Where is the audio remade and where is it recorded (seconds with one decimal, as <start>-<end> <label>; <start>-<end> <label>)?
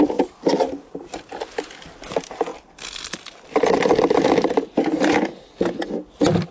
0.0-6.5 recorded